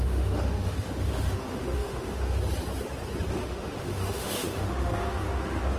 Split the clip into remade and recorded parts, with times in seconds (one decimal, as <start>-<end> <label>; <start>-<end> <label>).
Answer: 0.0-2.4 remade; 2.4-3.3 recorded; 3.3-5.8 remade